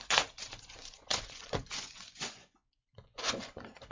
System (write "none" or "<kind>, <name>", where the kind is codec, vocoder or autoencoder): vocoder, Vocos